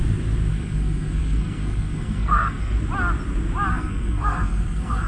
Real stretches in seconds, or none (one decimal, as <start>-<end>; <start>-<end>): 0.0-0.5; 2.8-3.7